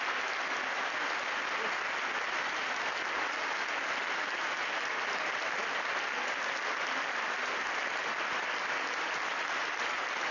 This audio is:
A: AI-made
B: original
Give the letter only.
B